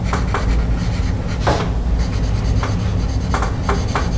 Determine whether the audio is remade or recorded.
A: recorded